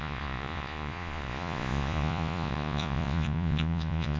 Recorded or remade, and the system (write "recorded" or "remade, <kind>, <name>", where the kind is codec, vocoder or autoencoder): remade, vocoder, Vocos